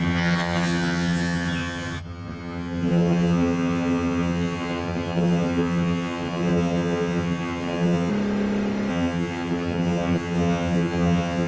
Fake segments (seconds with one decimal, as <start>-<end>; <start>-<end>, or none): 0.0-8.1; 8.9-11.5